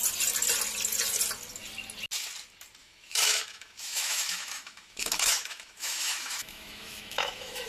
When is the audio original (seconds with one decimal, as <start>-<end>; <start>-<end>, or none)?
0.0-2.8